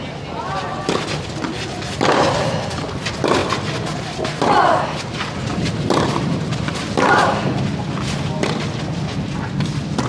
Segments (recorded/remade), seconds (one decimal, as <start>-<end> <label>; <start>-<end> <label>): 0.0-5.5 recorded; 5.5-7.3 remade; 7.3-10.1 recorded